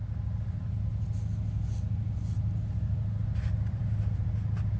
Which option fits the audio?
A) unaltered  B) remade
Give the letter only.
A